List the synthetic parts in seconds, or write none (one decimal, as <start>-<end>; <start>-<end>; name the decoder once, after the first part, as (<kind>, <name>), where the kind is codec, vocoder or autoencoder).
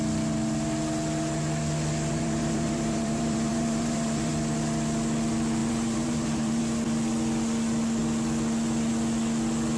2.1-4.3 (vocoder, BigVGAN v2); 5.6-6.6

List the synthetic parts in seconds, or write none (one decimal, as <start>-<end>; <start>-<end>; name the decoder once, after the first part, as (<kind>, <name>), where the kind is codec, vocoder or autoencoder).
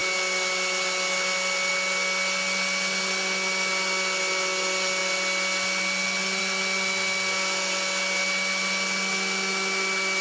none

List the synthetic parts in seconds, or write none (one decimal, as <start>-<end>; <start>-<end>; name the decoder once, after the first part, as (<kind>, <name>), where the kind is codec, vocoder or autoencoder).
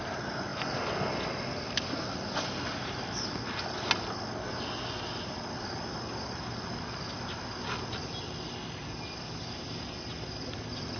none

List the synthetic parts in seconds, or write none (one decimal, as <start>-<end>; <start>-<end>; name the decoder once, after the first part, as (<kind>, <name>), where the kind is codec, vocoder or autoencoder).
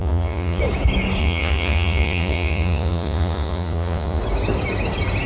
0.0-0.6 (vocoder, Vocos); 1.2-4.2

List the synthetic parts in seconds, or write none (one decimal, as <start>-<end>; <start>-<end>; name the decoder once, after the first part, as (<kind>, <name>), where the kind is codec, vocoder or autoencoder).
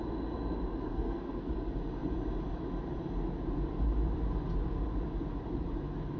0.9-1.5 (codec, SNAC)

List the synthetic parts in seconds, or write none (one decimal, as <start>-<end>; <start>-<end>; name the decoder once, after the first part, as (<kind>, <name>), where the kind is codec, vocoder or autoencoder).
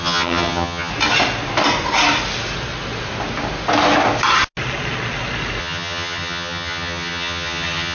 0.0-0.9 (vocoder, HiFi-GAN); 5.6-7.9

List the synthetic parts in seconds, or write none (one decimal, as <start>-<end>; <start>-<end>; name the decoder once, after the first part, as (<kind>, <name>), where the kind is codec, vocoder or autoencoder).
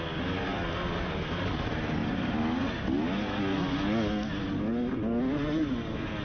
none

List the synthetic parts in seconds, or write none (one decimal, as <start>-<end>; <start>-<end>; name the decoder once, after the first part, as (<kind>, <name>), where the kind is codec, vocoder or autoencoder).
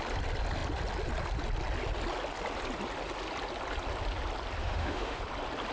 4.6-5.2 (autoencoder, DAC-VAE)